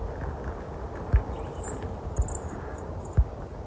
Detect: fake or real real